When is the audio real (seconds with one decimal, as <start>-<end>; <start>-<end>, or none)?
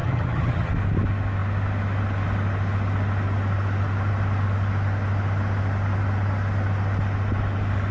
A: 0.7-7.9